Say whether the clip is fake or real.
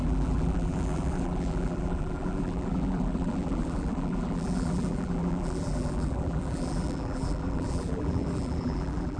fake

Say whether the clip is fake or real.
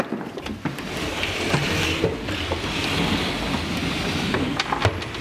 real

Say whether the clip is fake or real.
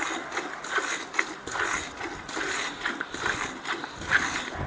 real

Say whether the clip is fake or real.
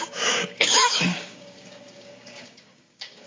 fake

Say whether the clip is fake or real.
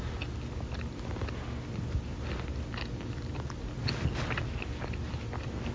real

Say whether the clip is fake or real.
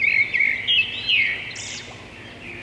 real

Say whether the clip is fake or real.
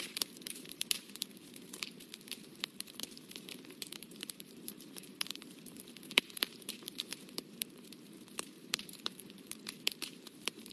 fake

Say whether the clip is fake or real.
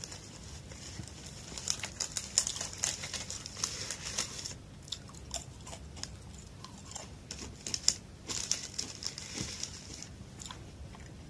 real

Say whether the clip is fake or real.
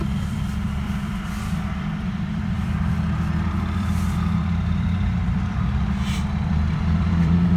fake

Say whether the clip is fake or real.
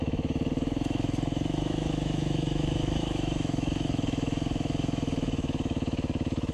fake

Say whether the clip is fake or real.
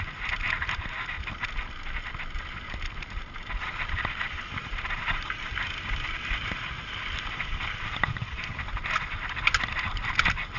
real